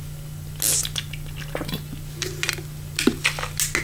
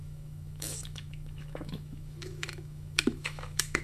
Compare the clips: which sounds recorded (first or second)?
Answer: first